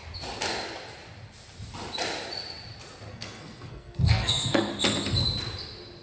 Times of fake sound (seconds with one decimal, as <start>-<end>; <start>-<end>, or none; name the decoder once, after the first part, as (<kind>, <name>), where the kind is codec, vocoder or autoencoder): 3.1-4.7 (codec, SNAC)